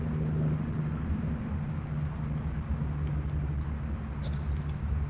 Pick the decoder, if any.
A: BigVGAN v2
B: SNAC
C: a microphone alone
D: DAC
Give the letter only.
C